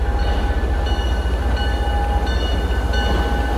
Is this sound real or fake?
real